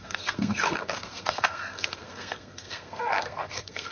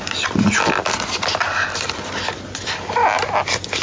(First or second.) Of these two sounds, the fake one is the first